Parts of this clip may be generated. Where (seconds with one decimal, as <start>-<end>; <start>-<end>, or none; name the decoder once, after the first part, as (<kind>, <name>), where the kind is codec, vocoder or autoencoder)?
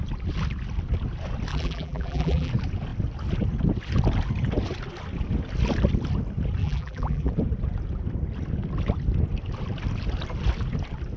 1.5-2.5 (vocoder, BigVGAN v2); 6.6-7.3